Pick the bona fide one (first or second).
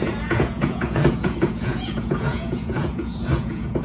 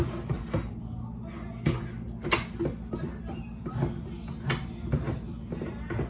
second